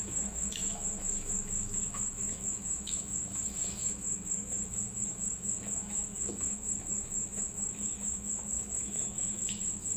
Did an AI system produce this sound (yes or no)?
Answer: yes